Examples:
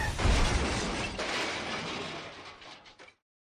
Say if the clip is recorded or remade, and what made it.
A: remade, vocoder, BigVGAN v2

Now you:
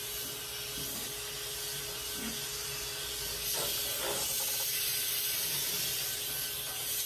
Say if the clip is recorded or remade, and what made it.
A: recorded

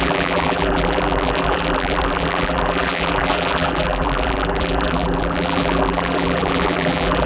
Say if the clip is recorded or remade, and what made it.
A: remade, vocoder, BigVGAN v2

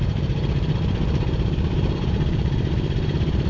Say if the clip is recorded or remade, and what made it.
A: remade, vocoder, BigVGAN v2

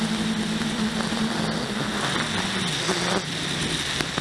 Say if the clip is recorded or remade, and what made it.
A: recorded